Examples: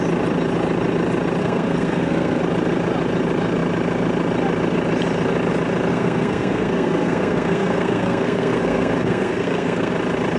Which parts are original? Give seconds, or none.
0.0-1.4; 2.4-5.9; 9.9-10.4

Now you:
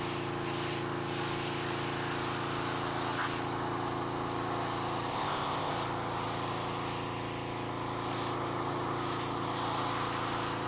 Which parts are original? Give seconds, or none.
0.0-5.1; 5.7-10.7